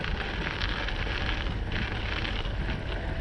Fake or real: real